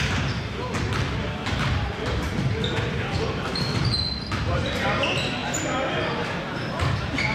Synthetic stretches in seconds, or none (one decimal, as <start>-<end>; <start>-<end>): none